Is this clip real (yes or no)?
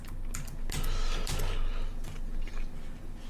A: yes